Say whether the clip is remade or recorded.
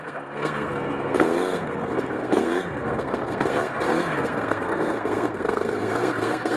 remade